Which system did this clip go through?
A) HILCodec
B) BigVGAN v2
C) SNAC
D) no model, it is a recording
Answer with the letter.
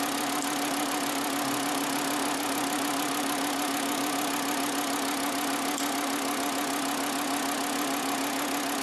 D